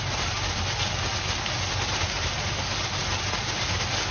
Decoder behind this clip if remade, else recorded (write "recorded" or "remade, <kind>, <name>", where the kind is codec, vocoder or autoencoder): recorded